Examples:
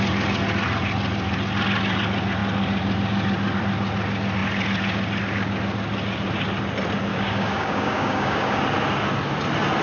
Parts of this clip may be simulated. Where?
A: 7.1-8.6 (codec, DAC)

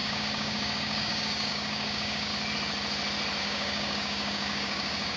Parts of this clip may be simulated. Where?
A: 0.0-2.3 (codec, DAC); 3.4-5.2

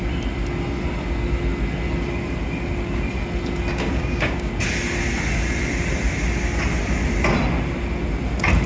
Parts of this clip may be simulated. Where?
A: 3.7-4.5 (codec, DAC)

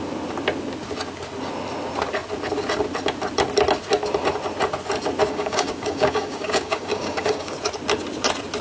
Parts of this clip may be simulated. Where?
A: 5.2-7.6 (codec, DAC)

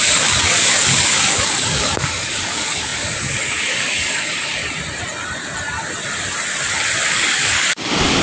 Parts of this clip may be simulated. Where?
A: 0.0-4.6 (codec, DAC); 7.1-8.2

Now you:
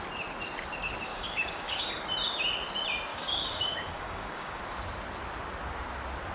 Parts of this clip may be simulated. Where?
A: 1.1-1.9 (codec, DAC); 3.1-4.6

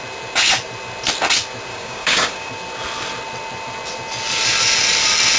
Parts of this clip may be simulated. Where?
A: 1.7-2.5 (codec, DAC)